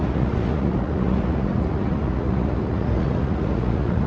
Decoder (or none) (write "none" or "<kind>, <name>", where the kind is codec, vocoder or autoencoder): vocoder, Vocos